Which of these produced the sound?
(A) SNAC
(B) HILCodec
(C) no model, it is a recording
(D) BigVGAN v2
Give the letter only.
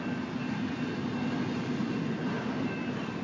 C